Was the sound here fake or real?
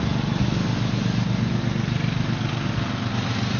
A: real